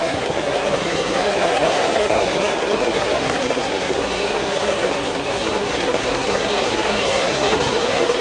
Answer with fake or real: fake